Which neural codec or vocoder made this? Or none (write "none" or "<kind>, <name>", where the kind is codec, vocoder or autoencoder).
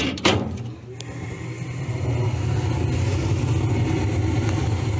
none